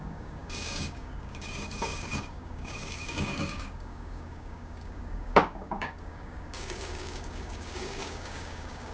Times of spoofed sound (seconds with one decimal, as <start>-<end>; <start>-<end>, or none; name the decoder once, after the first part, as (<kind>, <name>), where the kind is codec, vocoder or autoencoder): 0.0-8.9 (codec, DAC)